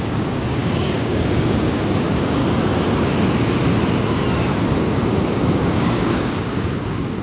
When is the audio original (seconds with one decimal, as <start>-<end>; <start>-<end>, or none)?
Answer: 2.4-4.8